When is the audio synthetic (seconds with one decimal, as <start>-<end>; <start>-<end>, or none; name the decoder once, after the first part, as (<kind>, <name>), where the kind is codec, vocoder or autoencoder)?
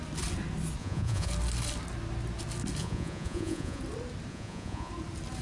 0.8-1.3 (vocoder, Vocos); 2.8-3.8; 4.3-4.9